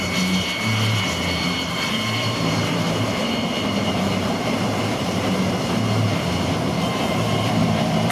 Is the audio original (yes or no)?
no